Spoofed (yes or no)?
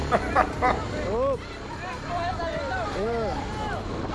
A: no